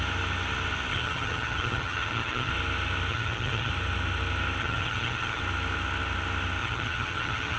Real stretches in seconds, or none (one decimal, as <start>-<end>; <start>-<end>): 0.0-0.9; 2.5-3.1; 3.7-4.6; 5.4-6.6